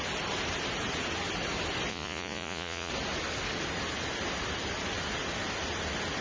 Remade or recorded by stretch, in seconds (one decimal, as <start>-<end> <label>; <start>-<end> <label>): 0.0-1.9 recorded; 1.9-2.9 remade; 2.9-6.2 recorded